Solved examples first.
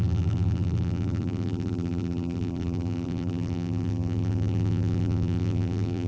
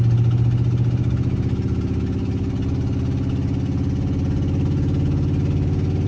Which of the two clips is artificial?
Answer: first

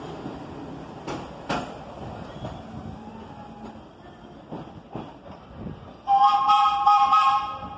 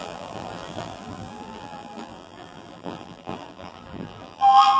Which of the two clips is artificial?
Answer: second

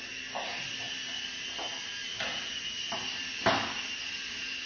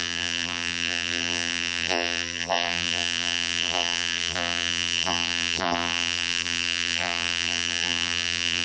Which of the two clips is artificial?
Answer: second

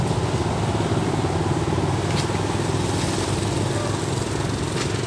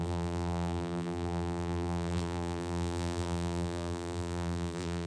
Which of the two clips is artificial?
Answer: second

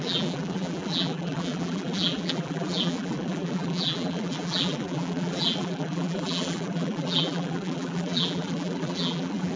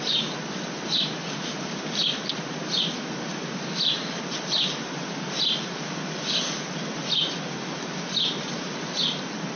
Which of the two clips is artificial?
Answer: first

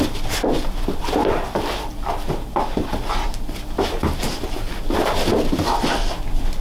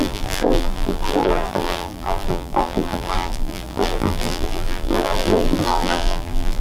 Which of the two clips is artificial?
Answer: second